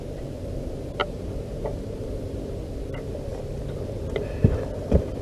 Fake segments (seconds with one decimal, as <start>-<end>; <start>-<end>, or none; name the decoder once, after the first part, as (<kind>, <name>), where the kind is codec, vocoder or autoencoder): 1.0-2.0 (vocoder, BigVGAN v2)